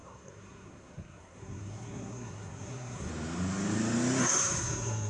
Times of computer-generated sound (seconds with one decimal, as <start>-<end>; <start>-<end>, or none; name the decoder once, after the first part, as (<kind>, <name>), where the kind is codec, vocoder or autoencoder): 0.0-3.1 (codec, SNAC); 4.2-5.1